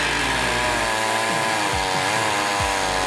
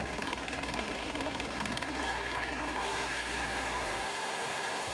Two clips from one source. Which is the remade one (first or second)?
second